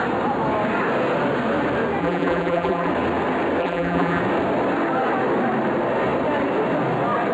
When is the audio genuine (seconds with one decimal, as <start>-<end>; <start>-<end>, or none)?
0.0-2.0; 2.9-3.6; 4.2-7.3